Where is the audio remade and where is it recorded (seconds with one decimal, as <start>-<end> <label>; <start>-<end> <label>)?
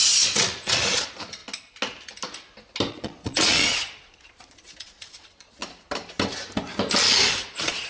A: 0.0-1.4 remade; 1.4-2.9 recorded; 2.9-5.6 remade; 5.6-7.5 recorded; 7.5-7.9 remade